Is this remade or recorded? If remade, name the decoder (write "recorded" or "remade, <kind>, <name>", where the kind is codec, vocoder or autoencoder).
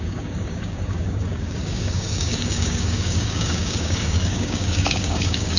remade, codec, DAC